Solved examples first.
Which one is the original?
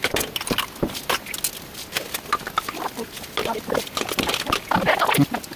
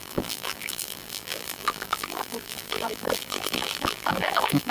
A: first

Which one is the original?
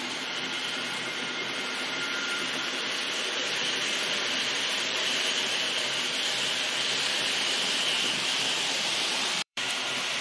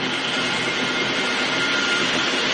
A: second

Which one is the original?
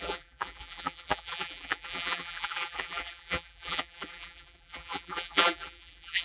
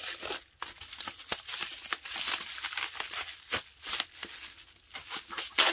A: second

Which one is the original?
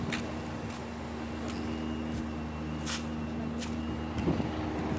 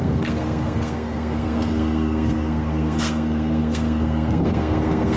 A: first